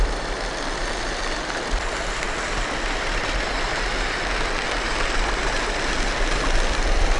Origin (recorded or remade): recorded